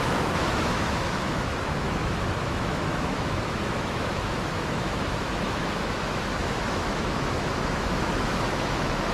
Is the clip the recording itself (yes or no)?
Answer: no